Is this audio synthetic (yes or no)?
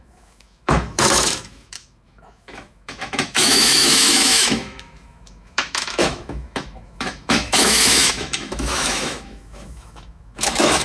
yes